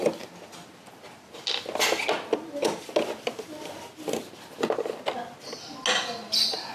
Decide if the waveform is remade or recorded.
recorded